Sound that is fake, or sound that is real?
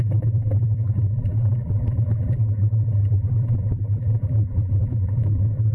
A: fake